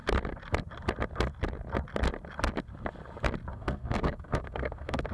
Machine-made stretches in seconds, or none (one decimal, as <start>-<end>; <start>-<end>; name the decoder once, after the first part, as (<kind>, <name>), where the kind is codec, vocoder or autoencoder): 3.5-5.1 (codec, SNAC)